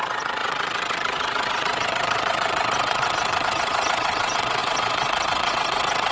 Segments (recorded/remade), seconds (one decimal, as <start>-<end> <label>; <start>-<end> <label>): 0.0-6.1 remade